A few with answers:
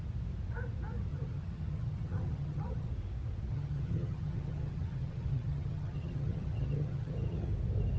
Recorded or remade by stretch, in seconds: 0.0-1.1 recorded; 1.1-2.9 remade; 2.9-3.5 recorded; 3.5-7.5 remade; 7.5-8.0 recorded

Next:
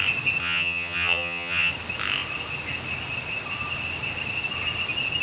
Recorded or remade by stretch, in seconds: 0.0-0.4 recorded; 0.4-1.7 remade; 1.7-5.2 recorded

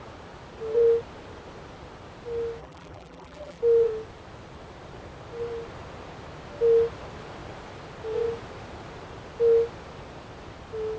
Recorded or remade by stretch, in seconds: 0.0-2.6 recorded; 2.6-3.6 remade; 3.6-11.0 recorded

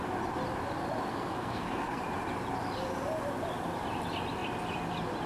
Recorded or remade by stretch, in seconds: 0.0-1.1 recorded; 1.1-2.0 remade; 2.0-5.3 recorded

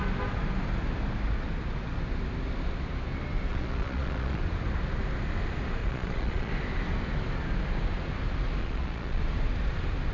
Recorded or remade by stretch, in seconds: 0.0-3.5 recorded; 3.5-4.4 remade; 4.4-5.8 recorded; 5.8-6.5 remade; 6.5-8.6 recorded; 8.6-9.2 remade; 9.2-10.1 recorded

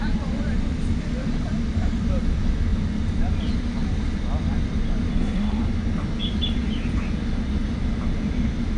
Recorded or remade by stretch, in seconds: 0.0-5.1 recorded; 5.1-5.6 remade; 5.6-8.8 recorded